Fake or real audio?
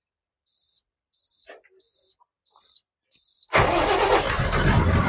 real